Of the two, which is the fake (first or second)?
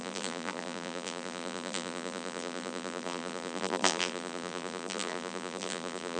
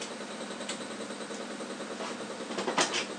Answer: first